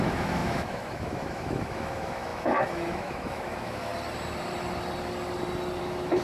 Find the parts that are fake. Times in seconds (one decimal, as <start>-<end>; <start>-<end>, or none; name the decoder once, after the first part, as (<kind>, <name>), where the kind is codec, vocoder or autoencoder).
0.0-3.9 (autoencoder, DAC-VAE); 5.8-6.2